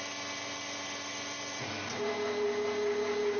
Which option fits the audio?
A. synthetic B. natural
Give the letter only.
B